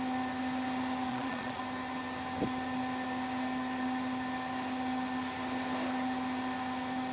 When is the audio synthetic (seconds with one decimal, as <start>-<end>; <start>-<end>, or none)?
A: 1.1-1.6